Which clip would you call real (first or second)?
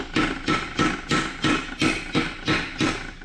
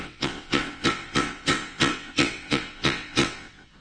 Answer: first